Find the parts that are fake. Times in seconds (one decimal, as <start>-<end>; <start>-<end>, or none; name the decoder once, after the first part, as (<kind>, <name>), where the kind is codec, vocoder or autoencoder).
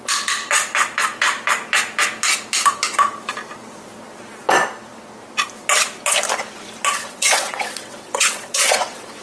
6.9-9.2 (vocoder, WaveNeXt)